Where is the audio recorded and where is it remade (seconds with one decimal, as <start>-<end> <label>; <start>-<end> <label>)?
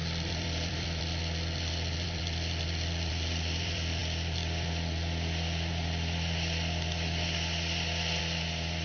0.0-4.0 remade; 4.0-8.2 recorded; 8.2-8.8 remade